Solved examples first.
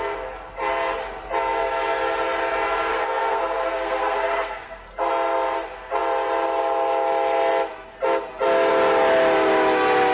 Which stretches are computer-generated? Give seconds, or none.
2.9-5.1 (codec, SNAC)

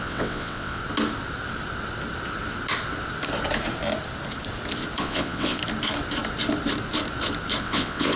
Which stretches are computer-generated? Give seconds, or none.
0.0-0.8 (vocoder, WaveNeXt); 5.0-5.6; 7.6-8.2

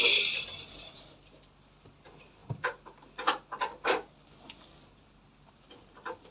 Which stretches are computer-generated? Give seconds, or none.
0.0-6.3 (vocoder, BigVGAN v2)

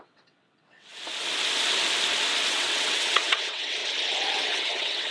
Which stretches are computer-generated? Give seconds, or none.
0.0-0.9 (vocoder, WaveNeXt); 2.5-3.8; 4.3-5.1

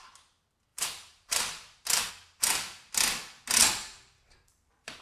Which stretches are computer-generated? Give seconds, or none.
0.7-2.1 (vocoder, BigVGAN v2); 3.6-5.0

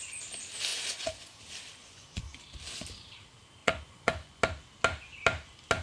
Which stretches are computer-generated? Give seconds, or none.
0.7-1.4 (vocoder, Vocos); 1.8-2.4; 3.6-4.4

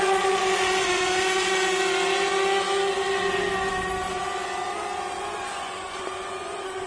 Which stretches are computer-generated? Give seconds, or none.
0.0-1.6 (vocoder, Vocos); 5.2-6.9